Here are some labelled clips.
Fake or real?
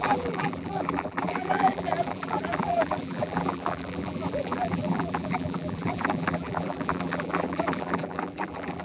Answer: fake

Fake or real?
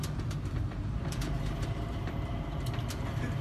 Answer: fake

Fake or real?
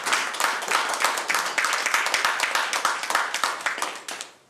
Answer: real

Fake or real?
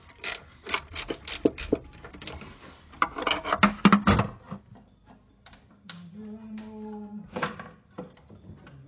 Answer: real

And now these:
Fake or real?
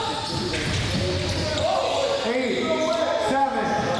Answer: real